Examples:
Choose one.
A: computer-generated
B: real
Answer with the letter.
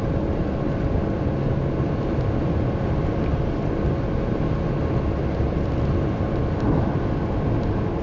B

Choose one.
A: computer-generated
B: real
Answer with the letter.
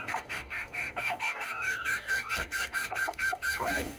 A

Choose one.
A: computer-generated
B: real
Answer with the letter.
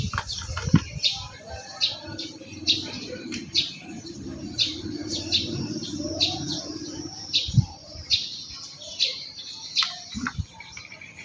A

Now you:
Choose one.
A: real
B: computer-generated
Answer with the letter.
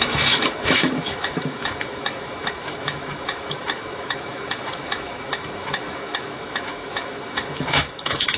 B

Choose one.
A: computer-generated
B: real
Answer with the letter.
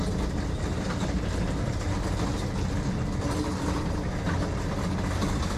B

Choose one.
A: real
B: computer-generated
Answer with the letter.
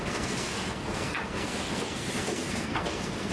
B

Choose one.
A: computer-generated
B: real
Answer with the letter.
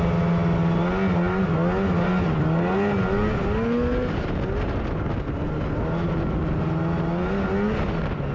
B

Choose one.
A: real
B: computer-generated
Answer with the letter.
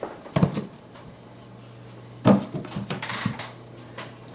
A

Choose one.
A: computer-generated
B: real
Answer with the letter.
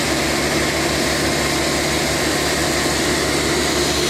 B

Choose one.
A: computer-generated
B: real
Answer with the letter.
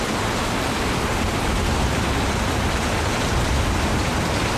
B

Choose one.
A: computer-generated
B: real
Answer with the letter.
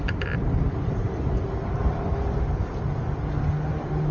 B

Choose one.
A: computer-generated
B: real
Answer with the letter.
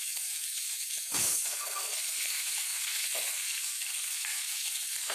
A